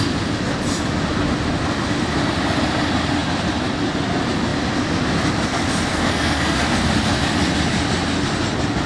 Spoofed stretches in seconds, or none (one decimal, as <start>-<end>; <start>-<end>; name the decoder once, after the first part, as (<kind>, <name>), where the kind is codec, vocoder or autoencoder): 5.9-6.7 (codec, SNAC)